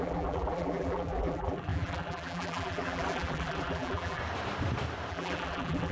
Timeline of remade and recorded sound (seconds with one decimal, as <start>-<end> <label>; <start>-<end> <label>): 0.0-4.2 remade; 4.2-5.1 recorded; 5.1-5.9 remade